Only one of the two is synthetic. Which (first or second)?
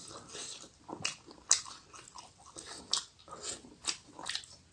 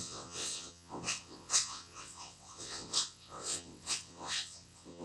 second